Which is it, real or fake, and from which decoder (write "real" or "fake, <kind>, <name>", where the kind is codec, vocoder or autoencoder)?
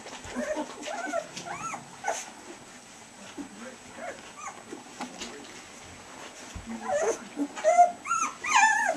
real